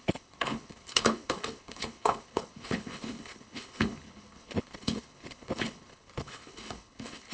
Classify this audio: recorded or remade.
remade